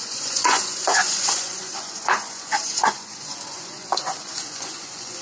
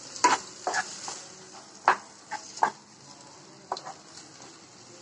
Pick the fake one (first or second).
first